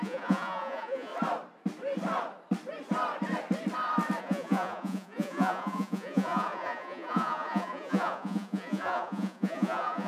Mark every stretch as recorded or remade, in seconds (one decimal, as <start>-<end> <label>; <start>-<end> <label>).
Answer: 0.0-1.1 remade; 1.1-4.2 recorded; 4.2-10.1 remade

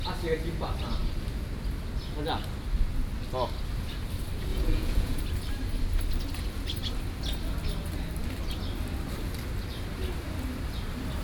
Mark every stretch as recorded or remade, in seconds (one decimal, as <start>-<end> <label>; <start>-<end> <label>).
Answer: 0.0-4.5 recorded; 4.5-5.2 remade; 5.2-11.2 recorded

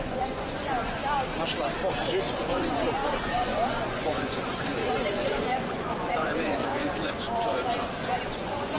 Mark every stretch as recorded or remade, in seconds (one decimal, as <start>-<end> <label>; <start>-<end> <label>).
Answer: 0.0-1.0 remade; 1.0-2.2 recorded; 2.2-8.8 remade

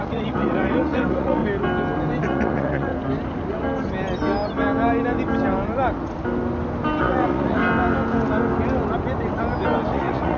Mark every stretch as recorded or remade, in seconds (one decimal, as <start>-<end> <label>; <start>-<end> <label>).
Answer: 0.0-1.4 remade; 1.4-2.2 recorded; 2.2-2.9 remade; 2.9-7.0 recorded; 7.0-7.6 remade; 7.6-9.9 recorded; 9.9-10.4 remade

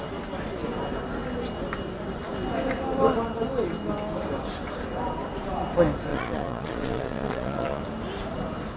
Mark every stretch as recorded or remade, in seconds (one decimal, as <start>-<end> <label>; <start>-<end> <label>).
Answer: 0.0-6.1 recorded; 6.1-7.8 remade; 7.8-8.8 recorded

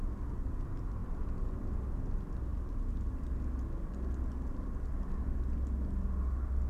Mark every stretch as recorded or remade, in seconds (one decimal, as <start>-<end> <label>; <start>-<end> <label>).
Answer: 0.0-6.7 recorded

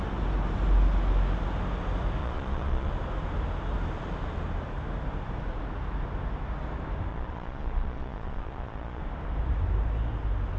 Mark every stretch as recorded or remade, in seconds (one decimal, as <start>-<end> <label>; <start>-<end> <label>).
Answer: 0.0-2.2 recorded; 2.2-2.9 remade; 2.9-7.1 recorded; 7.1-9.0 remade; 9.0-10.6 recorded

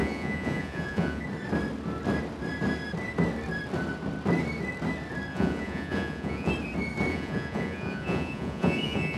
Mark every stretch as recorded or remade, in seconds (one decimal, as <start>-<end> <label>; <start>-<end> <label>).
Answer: 0.0-1.2 remade; 1.2-5.3 recorded; 5.3-6.5 remade; 6.5-7.1 recorded; 7.1-9.2 remade